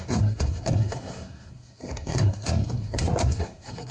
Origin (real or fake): fake